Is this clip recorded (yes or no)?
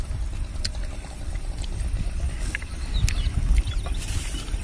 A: yes